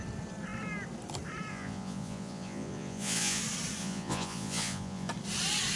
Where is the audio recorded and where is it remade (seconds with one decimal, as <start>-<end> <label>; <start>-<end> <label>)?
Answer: 0.0-1.5 recorded; 1.5-3.4 remade; 3.4-3.8 recorded; 3.8-5.1 remade; 5.1-5.8 recorded